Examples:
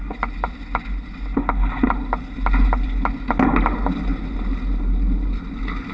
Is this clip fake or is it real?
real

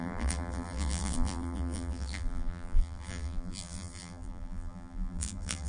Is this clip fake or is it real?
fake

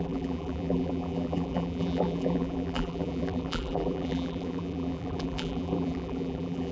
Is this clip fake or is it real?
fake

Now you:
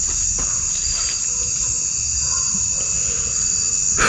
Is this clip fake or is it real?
real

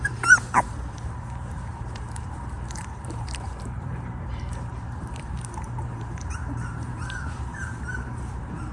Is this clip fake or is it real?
fake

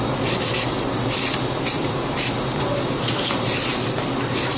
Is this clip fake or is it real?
real